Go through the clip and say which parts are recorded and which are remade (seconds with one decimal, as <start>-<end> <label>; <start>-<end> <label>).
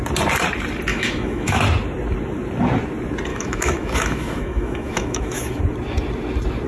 0.0-0.9 recorded; 0.9-1.6 remade; 1.6-3.3 recorded; 3.3-5.6 remade; 5.6-6.7 recorded